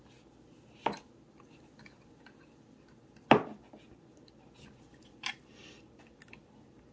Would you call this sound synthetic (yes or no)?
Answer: no